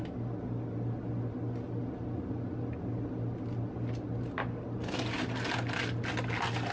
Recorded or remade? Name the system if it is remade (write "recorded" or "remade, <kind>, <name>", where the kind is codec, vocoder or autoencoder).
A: recorded